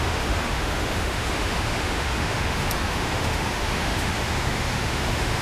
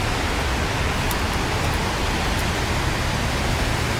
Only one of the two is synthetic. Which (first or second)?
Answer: first